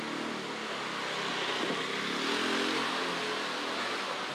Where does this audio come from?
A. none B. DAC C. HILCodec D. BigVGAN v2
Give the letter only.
A